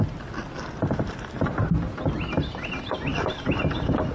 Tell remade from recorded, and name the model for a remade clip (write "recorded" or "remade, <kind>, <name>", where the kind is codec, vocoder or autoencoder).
recorded